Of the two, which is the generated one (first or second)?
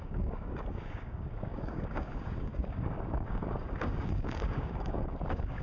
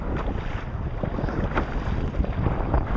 first